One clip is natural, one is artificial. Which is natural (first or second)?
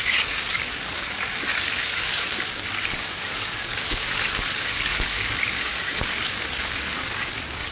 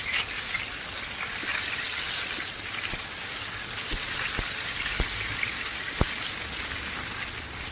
second